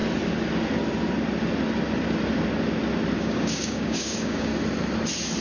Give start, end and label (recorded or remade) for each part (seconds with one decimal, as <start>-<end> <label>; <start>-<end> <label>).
0.0-3.2 recorded; 3.2-4.5 remade; 4.5-5.4 recorded